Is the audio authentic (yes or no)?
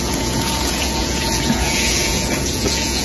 no